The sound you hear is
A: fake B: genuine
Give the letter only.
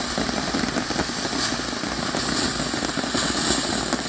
B